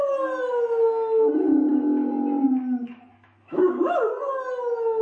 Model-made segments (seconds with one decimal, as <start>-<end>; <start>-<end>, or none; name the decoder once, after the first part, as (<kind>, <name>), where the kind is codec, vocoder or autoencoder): 3.1-4.1 (autoencoder, DAC-VAE)